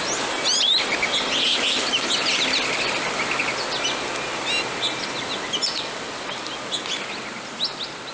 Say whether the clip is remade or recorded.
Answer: recorded